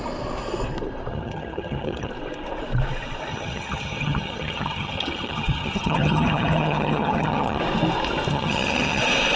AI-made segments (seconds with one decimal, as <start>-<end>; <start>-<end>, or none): 1.1-2.1; 3.3-7.6; 8.3-9.0